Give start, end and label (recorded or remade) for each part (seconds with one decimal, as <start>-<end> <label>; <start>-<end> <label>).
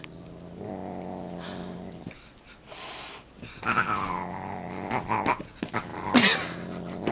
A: 0.0-7.1 recorded